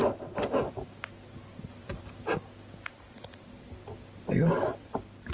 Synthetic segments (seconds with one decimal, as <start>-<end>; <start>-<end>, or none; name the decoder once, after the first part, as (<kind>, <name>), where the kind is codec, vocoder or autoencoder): 1.7-2.3 (vocoder, BigVGAN v2); 3.6-5.3